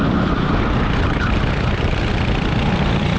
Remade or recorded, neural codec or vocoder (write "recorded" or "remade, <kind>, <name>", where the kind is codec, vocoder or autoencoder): recorded